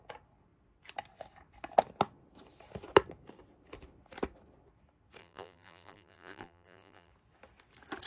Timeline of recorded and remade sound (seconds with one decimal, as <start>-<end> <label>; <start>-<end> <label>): 0.0-5.2 recorded; 5.2-7.1 remade; 7.1-8.1 recorded